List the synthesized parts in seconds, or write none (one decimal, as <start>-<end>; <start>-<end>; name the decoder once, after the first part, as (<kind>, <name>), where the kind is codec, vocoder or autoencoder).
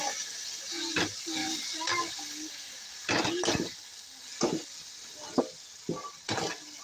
none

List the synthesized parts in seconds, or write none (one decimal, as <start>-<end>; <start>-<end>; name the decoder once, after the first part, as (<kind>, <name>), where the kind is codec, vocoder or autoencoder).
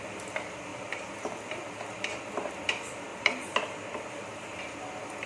0.7-1.4 (vocoder, BigVGAN v2); 3.1-4.6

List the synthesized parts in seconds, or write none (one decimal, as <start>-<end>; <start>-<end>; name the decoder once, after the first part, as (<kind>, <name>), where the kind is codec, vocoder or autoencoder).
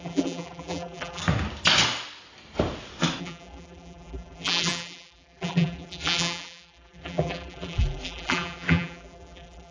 0.0-1.2 (vocoder, BigVGAN v2); 3.2-9.7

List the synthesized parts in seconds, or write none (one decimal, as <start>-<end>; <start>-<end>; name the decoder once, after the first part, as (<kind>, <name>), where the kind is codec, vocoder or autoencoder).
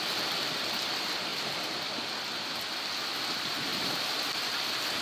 3.7-4.3 (vocoder, BigVGAN v2)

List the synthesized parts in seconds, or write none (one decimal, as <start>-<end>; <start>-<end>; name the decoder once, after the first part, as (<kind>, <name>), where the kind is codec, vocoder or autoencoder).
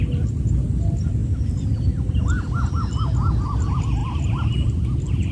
1.2-2.7 (vocoder, BigVGAN v2)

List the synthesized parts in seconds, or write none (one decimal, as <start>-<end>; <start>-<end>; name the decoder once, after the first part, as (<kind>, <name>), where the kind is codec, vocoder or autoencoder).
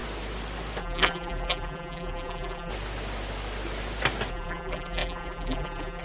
0.8-2.7 (vocoder, BigVGAN v2); 4.3-6.0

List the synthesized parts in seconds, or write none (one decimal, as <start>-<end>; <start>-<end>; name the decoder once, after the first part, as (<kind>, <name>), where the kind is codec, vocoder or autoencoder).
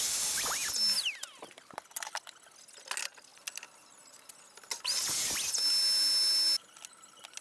none